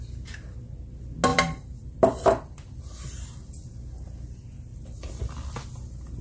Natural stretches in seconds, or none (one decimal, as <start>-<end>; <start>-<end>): 0.0-1.3; 2.8-4.7; 5.2-6.2